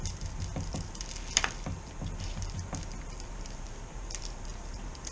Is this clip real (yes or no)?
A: yes